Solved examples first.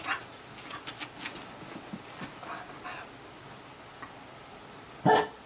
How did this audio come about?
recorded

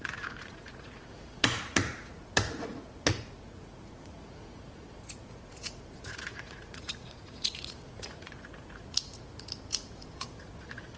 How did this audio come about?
remade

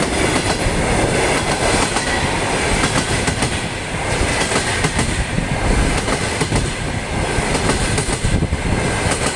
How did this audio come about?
recorded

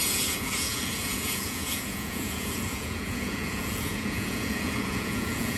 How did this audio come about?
remade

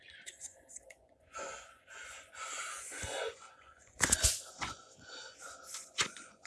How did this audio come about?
remade